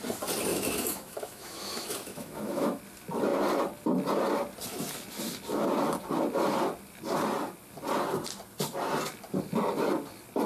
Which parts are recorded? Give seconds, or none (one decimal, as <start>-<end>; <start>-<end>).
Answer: 0.0-0.5; 2.8-10.5